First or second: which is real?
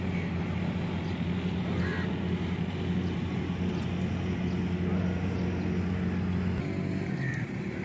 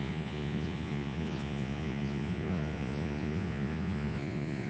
first